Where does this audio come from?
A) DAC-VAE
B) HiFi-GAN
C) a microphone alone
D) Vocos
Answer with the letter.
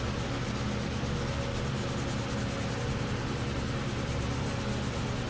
C